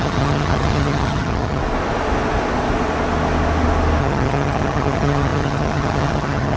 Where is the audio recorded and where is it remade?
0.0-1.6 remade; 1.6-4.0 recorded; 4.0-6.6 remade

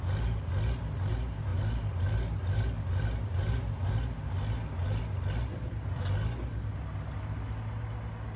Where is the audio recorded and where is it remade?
0.0-8.4 recorded

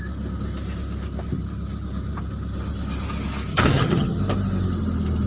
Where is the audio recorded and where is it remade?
0.0-3.5 recorded; 3.5-4.2 remade; 4.2-5.3 recorded

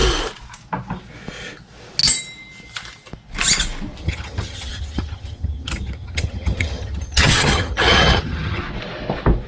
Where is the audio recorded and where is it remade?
0.0-4.0 recorded; 4.0-8.6 remade; 8.6-9.5 recorded

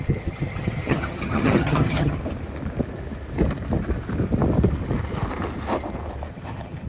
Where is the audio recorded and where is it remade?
0.0-2.2 remade; 2.2-6.3 recorded; 6.3-6.9 remade

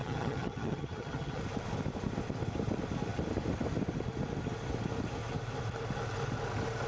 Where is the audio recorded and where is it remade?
0.0-1.4 remade; 1.4-6.9 recorded

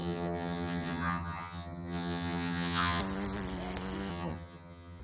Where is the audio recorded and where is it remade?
0.0-3.0 remade; 3.0-4.1 recorded; 4.1-5.0 remade

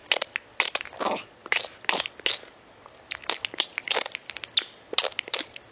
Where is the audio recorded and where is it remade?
0.0-5.7 recorded